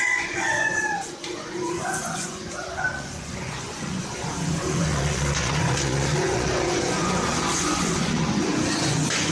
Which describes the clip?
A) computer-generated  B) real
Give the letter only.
A